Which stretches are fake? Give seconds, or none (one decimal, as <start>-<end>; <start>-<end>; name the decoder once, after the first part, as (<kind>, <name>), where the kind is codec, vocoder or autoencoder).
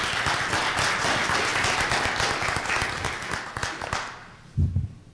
none